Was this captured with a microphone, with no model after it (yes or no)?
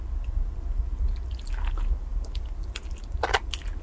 yes